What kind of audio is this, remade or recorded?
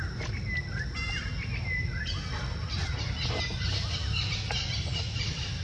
recorded